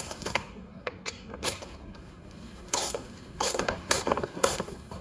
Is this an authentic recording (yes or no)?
no